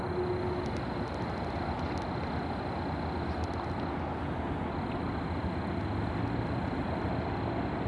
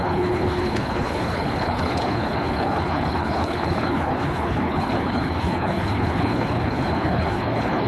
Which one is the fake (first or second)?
second